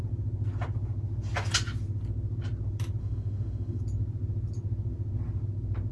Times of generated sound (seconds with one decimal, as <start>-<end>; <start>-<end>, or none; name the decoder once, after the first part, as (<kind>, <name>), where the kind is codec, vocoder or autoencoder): 3.0-3.8 (autoencoder, DAC-VAE)